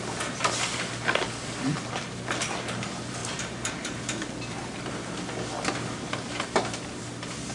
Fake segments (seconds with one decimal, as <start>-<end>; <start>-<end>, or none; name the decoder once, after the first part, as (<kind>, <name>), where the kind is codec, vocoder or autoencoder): none